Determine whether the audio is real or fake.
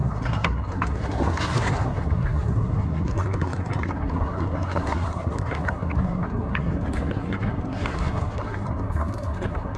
fake